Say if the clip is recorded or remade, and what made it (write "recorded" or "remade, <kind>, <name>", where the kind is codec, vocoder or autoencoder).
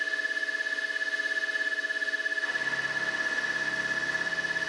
recorded